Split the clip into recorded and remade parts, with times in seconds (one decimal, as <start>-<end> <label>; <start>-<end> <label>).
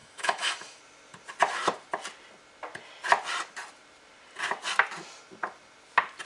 0.0-0.8 remade; 0.8-6.3 recorded